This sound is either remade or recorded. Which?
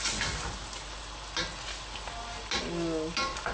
recorded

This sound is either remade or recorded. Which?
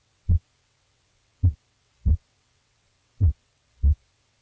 remade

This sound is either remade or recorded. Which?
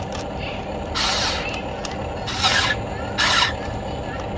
recorded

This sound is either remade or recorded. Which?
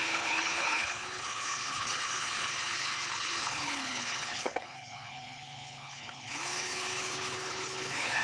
remade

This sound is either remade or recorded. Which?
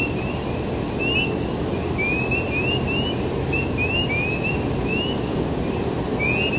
recorded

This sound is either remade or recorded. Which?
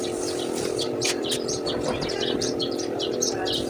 remade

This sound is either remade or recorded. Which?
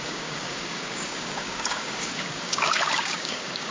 remade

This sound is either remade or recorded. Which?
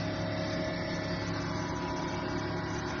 recorded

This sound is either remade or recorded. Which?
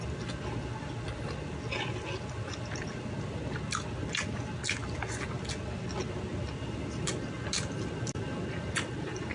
recorded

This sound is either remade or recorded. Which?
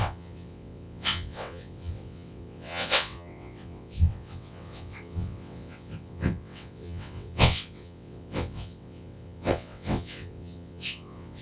remade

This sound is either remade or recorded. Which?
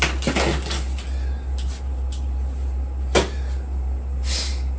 recorded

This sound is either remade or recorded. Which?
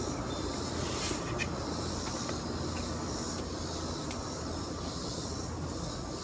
recorded